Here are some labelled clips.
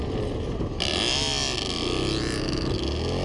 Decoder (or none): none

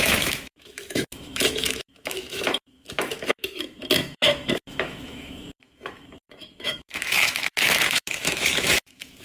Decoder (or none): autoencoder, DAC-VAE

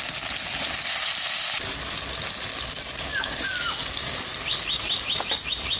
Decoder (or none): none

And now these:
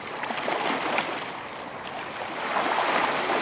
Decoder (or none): none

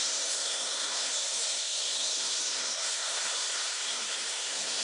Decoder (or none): codec, SNAC